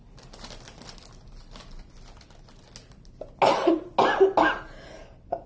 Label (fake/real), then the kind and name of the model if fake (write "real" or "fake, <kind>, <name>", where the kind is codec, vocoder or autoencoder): real